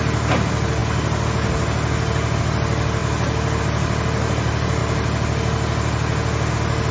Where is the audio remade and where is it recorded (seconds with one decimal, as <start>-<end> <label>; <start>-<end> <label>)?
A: 0.0-6.9 recorded